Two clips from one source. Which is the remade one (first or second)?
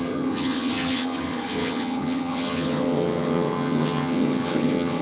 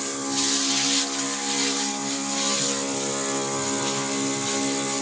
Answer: first